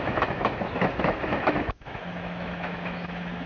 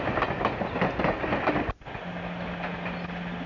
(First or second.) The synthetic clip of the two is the first